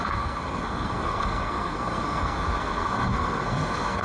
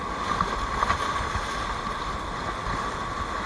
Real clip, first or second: second